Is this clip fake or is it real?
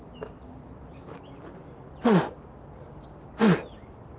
real